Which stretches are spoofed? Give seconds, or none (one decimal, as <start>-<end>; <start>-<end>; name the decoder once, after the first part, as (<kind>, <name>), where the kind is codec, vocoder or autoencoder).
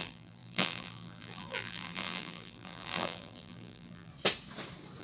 0.0-4.1 (vocoder, BigVGAN v2)